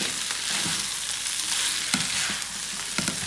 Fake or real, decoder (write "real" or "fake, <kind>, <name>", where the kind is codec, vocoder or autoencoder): real